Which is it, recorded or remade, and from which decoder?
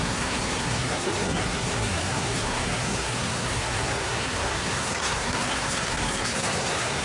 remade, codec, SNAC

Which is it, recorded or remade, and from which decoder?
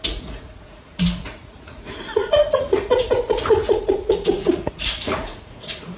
remade, vocoder, Vocos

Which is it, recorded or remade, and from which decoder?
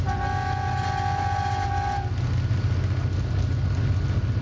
recorded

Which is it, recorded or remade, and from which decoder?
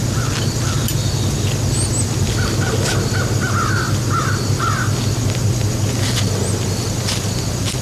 recorded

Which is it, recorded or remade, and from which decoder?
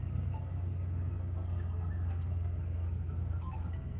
remade, codec, SNAC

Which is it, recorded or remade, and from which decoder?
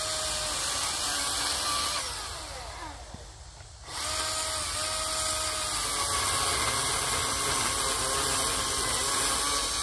recorded